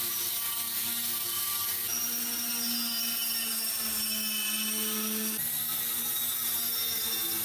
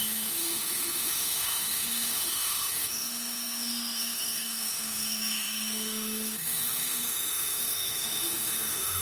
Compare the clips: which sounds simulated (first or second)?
second